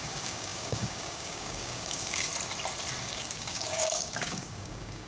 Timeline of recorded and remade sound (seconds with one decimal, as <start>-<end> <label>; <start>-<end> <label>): 0.0-2.3 remade; 2.3-3.0 recorded; 3.0-5.1 remade